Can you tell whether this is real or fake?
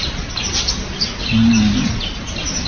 real